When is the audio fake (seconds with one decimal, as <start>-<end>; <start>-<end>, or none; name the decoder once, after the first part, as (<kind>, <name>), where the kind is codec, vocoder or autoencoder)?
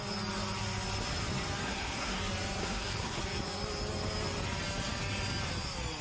1.6-2.2 (codec, SNAC); 2.6-3.2